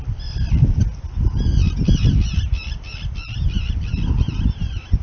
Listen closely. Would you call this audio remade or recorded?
recorded